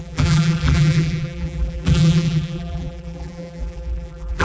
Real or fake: fake